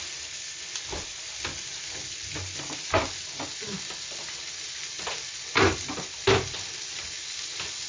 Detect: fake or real real